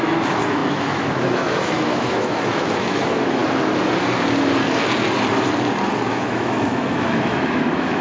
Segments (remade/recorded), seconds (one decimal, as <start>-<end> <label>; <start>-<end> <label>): 0.0-3.4 remade; 3.4-6.1 recorded; 6.1-8.0 remade